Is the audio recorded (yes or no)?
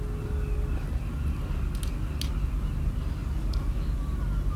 yes